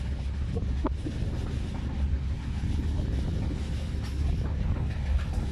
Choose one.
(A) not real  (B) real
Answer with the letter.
B